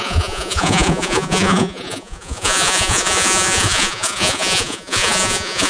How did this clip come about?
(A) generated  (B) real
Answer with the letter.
A